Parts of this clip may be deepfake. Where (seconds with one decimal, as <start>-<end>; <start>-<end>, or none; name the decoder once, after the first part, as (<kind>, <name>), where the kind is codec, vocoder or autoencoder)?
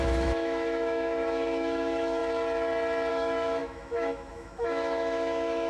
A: 0.0-2.2 (autoencoder, DAC-VAE); 3.1-5.7